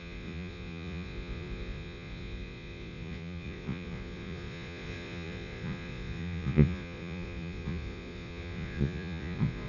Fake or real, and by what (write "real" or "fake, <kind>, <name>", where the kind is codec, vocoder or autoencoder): fake, vocoder, Vocos